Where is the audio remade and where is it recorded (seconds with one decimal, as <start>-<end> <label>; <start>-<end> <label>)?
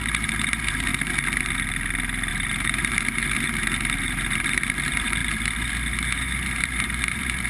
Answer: 0.0-0.9 remade; 0.9-2.3 recorded; 2.3-7.5 remade